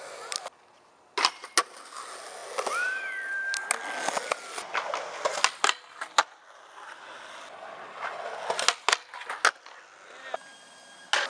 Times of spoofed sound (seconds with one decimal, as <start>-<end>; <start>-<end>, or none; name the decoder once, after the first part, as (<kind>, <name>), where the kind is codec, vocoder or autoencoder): none